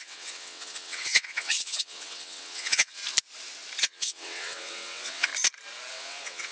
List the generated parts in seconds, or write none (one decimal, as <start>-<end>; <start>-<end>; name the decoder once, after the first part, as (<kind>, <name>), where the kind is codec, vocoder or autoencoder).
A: 0.0-3.0 (vocoder, WaveNeXt); 3.8-5.3; 5.9-6.5